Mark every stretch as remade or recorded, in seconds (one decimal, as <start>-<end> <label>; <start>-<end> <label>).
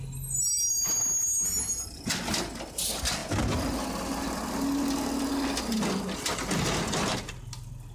0.0-7.9 recorded